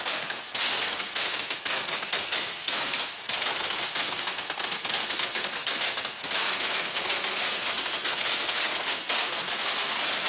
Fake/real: fake